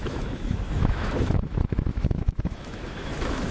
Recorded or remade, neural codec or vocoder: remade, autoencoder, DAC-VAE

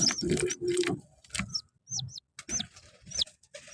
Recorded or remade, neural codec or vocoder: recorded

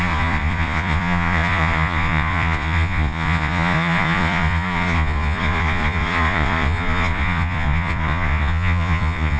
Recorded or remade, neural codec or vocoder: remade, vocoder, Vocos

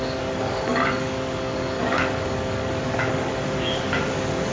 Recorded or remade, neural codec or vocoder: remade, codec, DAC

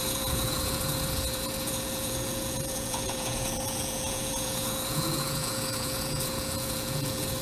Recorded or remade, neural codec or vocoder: remade, vocoder, Vocos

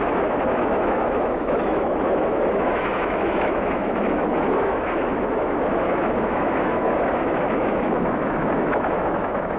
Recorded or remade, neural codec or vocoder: remade, autoencoder, DAC-VAE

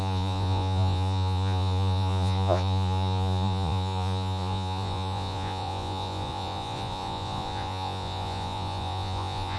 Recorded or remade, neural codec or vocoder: remade, vocoder, Vocos